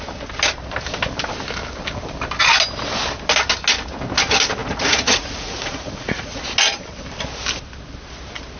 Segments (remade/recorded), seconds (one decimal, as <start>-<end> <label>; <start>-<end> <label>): 0.0-4.6 recorded; 4.6-6.4 remade; 6.4-8.6 recorded